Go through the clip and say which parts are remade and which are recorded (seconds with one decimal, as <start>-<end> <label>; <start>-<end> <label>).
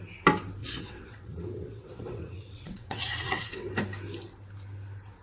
0.0-0.6 recorded; 0.6-3.7 remade; 3.7-5.2 recorded